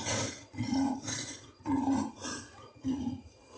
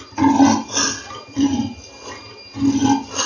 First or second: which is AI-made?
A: first